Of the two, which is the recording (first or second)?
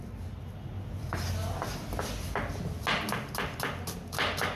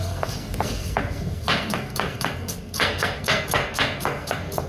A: first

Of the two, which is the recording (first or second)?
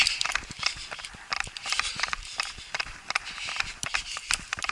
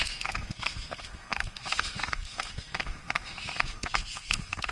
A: first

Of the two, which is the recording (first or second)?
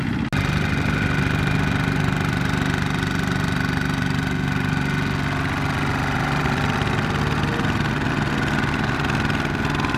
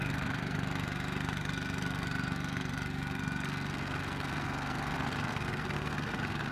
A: first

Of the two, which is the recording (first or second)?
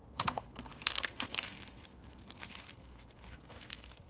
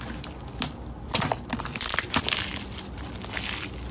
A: second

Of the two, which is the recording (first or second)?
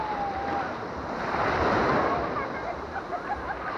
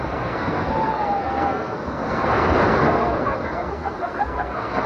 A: first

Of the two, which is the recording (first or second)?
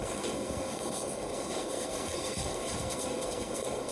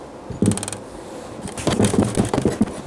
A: second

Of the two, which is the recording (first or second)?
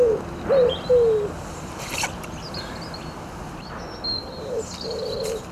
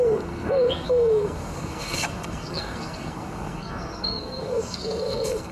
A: first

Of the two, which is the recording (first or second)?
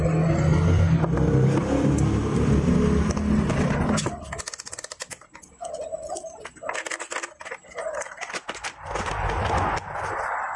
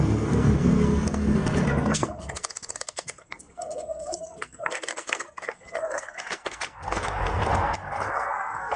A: first